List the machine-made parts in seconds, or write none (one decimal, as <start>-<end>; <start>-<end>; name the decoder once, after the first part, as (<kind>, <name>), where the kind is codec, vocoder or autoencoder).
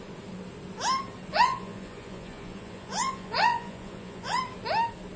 1.3-4.4 (vocoder, Vocos)